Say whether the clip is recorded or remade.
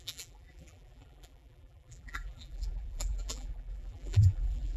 remade